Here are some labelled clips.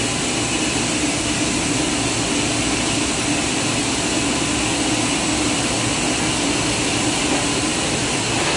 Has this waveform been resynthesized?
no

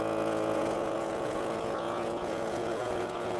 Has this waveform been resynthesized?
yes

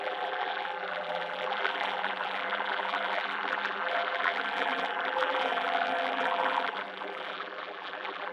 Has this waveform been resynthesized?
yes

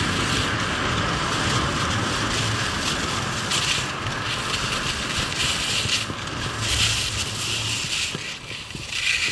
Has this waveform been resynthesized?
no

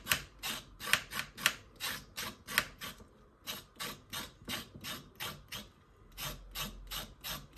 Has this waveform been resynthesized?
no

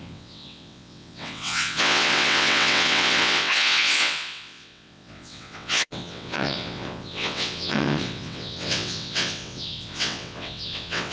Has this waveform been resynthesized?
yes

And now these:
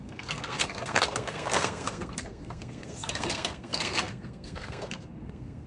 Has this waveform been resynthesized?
yes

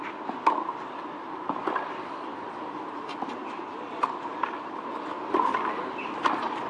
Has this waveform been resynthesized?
no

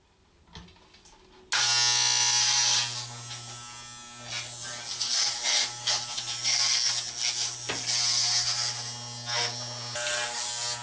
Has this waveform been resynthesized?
no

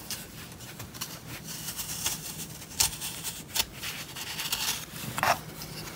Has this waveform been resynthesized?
no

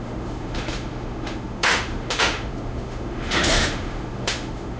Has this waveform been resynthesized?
yes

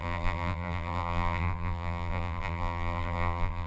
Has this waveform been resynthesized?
yes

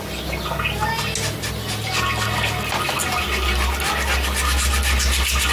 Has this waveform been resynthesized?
no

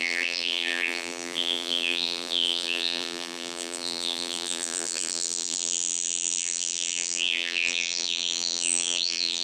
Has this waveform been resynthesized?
yes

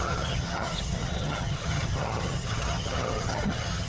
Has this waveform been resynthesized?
yes